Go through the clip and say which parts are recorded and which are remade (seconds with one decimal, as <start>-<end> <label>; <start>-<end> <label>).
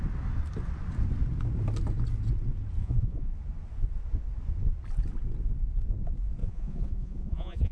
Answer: 0.0-2.8 recorded; 2.8-3.3 remade; 3.3-6.4 recorded; 6.4-7.7 remade